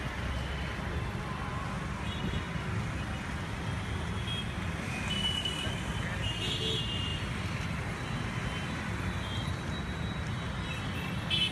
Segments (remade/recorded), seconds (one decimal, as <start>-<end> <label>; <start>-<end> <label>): 0.0-11.5 recorded